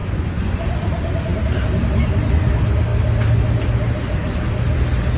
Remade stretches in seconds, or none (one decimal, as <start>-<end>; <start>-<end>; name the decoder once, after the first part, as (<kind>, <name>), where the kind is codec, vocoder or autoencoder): 0.0-0.6 (vocoder, Vocos)